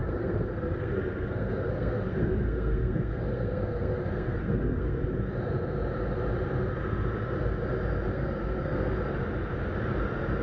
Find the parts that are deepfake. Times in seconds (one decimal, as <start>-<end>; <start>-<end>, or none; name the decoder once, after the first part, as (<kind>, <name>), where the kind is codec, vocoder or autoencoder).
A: 0.0-5.0 (codec, SNAC); 8.1-8.9